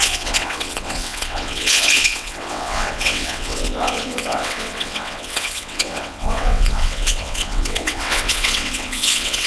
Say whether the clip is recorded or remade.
remade